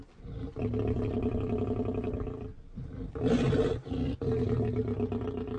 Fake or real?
real